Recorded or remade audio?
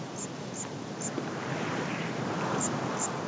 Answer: recorded